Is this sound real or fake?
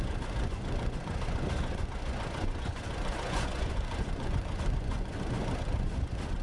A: fake